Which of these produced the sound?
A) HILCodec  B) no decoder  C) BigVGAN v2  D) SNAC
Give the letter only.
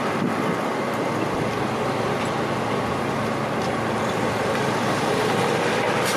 B